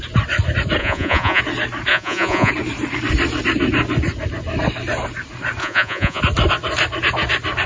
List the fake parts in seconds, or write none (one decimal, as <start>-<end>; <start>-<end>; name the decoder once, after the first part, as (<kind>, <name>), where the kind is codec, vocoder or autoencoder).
0.8-1.4 (vocoder, Vocos); 1.9-2.5; 5.6-6.2